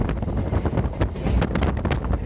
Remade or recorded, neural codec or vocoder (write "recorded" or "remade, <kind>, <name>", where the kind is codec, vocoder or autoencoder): recorded